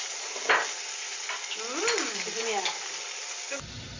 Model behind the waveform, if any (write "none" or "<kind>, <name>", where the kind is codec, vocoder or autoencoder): none